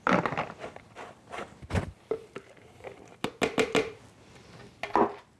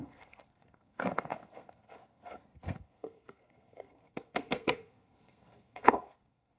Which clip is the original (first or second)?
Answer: first